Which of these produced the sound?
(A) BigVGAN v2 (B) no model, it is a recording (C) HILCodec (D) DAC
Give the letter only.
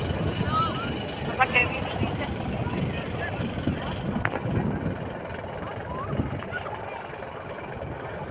A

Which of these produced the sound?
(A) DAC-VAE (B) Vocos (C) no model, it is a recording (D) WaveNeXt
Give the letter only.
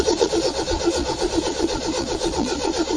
B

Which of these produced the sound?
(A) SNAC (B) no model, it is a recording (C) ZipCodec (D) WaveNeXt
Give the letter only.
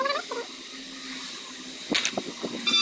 B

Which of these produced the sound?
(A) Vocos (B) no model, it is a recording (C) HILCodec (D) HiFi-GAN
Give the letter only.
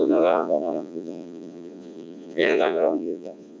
A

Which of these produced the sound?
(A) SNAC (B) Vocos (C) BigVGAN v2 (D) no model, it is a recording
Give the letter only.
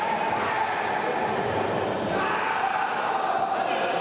D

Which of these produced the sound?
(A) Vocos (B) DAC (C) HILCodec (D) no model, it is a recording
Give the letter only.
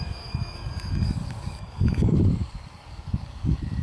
B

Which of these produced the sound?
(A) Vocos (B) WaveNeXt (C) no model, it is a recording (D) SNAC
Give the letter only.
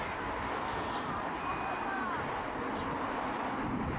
C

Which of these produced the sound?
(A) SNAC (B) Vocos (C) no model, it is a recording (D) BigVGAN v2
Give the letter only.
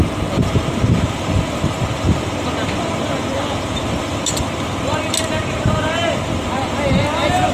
C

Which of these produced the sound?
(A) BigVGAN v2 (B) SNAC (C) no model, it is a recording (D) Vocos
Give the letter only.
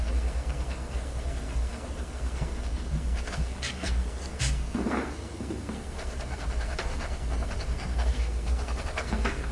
B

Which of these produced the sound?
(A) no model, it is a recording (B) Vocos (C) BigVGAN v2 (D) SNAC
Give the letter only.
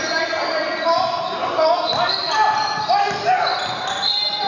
A